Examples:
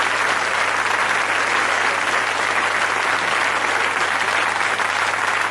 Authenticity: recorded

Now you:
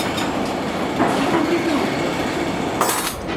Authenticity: recorded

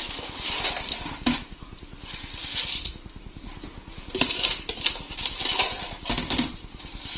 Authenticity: recorded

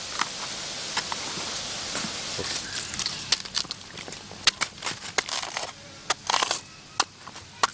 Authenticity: recorded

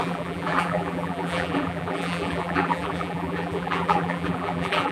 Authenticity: remade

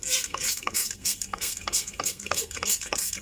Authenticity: remade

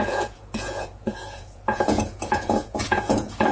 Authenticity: remade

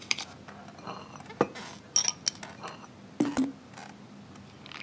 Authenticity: recorded